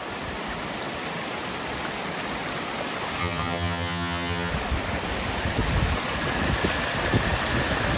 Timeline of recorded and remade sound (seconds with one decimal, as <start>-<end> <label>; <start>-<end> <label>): 0.0-3.2 recorded; 3.2-4.5 remade; 4.5-8.0 recorded